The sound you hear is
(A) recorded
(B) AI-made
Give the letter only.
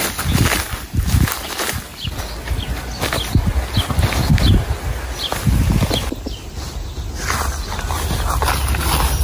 A